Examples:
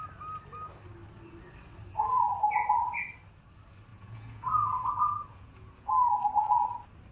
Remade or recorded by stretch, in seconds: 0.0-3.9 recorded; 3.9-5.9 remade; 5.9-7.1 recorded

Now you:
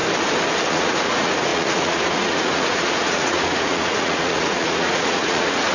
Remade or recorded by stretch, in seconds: 0.0-0.7 recorded; 0.7-5.7 remade